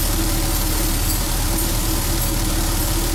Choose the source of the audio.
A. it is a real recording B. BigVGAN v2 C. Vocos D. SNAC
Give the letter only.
B